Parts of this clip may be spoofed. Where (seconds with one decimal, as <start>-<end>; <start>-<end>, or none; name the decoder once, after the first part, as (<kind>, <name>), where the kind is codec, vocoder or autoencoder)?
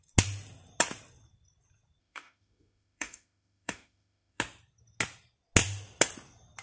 2.0-4.4 (autoencoder, DAC-VAE)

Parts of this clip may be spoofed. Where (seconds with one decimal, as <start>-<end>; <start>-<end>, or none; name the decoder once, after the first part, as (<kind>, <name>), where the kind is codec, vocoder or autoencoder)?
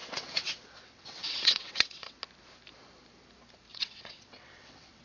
0.0-2.2 (vocoder, WaveNeXt); 3.7-5.0